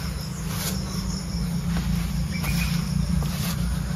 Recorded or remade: recorded